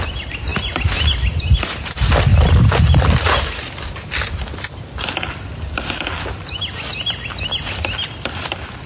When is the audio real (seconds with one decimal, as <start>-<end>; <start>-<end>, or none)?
0.0-8.9